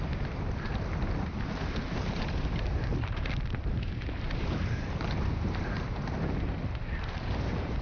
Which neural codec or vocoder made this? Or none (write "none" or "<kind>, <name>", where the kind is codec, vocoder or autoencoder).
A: none